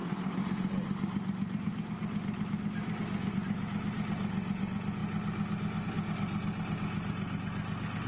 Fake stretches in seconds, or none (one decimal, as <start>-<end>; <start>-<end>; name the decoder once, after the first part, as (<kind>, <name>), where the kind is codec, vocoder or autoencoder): none